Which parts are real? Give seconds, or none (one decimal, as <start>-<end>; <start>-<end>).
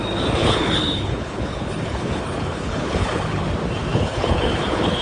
0.0-0.4; 3.4-3.9